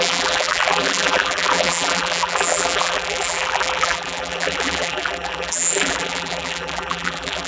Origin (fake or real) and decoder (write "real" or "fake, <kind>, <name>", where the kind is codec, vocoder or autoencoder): fake, vocoder, BigVGAN v2